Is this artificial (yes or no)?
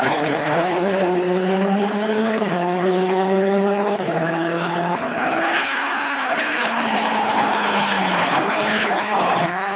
yes